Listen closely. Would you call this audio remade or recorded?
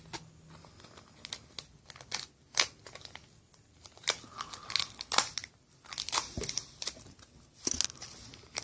recorded